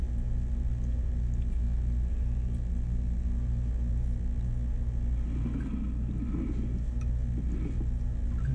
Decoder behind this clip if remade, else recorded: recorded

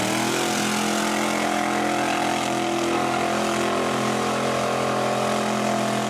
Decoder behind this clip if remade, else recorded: recorded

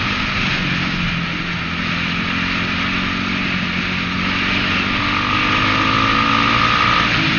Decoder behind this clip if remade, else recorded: recorded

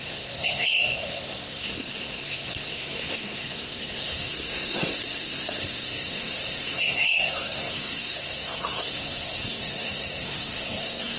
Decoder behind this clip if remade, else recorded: remade, codec, SNAC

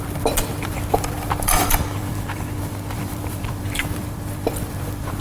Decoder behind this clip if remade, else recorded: remade, vocoder, BigVGAN v2